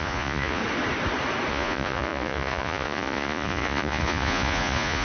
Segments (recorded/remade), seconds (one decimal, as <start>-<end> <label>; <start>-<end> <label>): 0.0-0.6 remade; 0.6-1.5 recorded; 1.5-5.0 remade